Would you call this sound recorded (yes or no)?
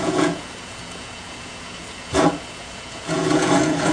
no